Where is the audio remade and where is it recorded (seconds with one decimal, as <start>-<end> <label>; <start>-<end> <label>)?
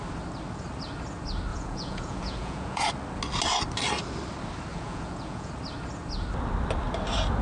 0.0-1.5 recorded; 1.5-2.9 remade; 2.9-4.7 recorded; 4.7-5.5 remade; 5.5-7.4 recorded